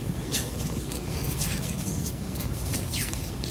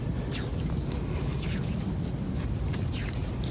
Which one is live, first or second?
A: second